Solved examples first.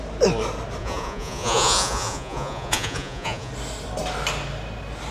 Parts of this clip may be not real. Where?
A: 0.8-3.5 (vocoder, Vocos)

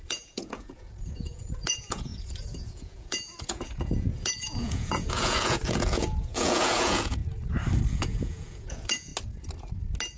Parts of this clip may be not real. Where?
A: 0.0-7.2 (vocoder, Vocos); 7.9-9.1

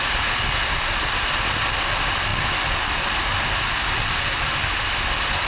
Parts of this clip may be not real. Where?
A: none

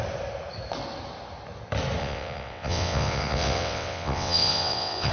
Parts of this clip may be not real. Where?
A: 2.0-5.1 (vocoder, WaveNeXt)

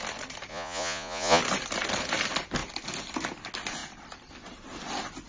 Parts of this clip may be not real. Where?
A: 0.5-1.4 (vocoder, Vocos)

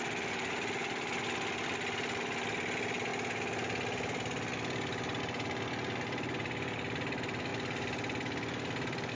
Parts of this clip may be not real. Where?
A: none

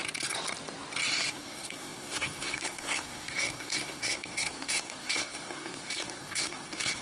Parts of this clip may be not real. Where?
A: 1.3-7.0 (codec, SNAC)